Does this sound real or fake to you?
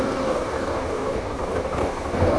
fake